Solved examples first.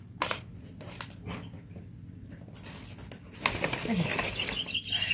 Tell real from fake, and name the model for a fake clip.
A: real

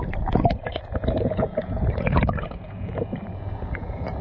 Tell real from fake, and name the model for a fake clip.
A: fake, vocoder, Vocos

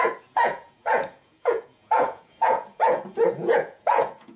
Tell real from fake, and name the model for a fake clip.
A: fake, vocoder, Vocos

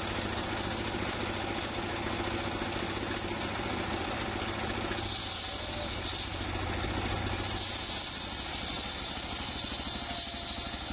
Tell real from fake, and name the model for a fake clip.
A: real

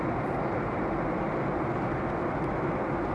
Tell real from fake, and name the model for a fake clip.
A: real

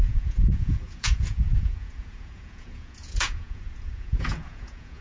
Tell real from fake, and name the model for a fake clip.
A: fake, vocoder, Vocos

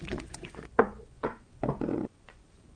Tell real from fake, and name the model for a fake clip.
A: fake, vocoder, Vocos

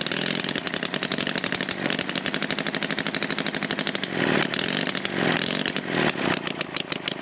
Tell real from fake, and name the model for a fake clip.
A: real